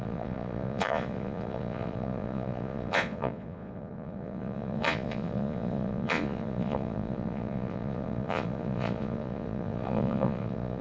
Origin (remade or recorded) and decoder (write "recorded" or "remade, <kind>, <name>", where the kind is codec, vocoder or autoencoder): remade, vocoder, Vocos